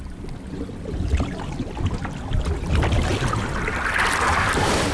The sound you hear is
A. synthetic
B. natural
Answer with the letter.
B